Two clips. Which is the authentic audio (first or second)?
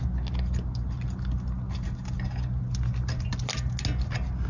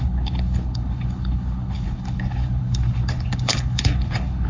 first